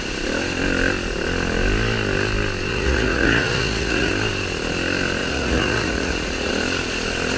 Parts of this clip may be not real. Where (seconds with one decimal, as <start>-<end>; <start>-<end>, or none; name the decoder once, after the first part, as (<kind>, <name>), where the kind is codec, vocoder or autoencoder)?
2.7-4.1 (vocoder, Vocos); 5.2-6.5